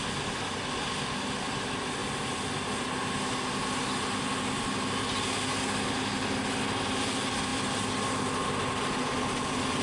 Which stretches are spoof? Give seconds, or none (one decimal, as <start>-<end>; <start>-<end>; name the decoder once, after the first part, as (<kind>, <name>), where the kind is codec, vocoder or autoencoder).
none